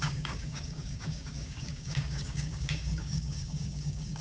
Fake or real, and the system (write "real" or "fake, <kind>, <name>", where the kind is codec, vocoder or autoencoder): fake, codec, DAC